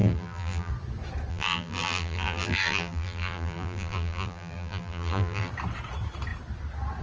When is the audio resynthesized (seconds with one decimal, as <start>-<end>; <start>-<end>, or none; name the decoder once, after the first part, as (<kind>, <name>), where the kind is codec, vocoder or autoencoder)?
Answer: 0.0-0.7 (vocoder, BigVGAN v2); 1.3-5.5